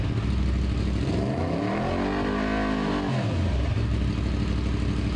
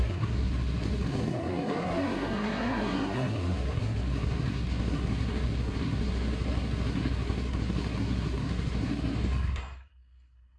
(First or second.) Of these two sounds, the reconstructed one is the second